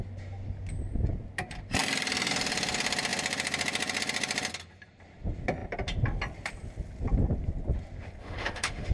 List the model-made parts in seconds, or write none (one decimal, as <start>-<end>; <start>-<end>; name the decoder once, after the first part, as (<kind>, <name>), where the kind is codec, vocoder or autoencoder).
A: 8.2-8.9 (autoencoder, DAC-VAE)